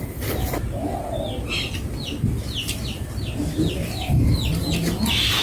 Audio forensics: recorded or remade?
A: recorded